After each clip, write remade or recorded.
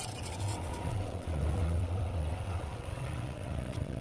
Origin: remade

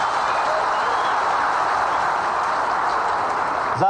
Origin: recorded